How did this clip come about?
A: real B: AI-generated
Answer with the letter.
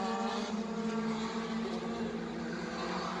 A